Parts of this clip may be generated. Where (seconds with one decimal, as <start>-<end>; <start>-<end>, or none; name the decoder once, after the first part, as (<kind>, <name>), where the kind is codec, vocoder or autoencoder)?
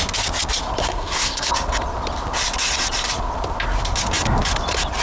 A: 0.8-1.5 (codec, SNAC)